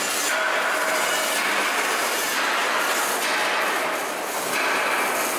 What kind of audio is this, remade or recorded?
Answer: recorded